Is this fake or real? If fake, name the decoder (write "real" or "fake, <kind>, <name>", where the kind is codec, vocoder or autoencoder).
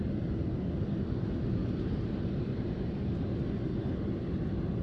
real